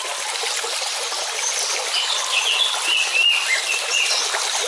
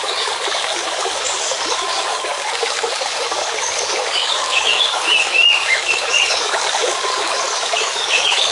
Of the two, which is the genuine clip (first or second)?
first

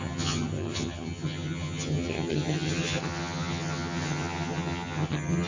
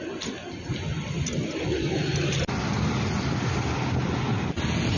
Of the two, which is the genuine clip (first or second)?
second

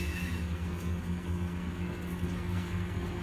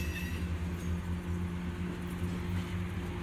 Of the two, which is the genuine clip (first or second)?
second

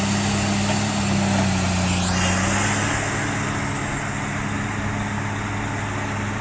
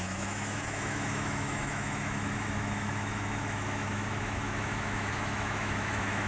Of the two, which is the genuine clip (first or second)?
first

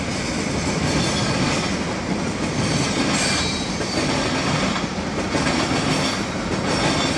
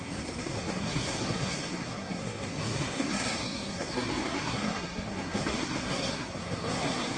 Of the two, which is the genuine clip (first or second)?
first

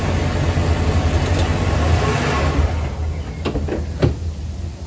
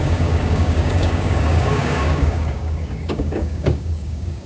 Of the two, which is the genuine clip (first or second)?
first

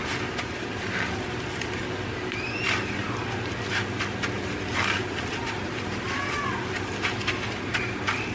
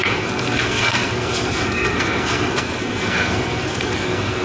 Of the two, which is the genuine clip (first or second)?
first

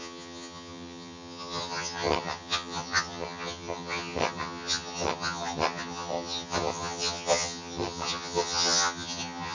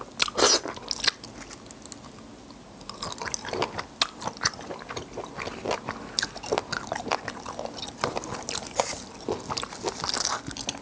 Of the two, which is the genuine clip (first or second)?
second